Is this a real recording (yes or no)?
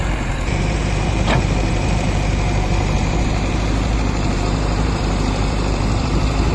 no